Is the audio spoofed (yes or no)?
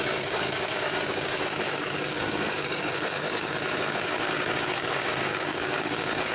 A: yes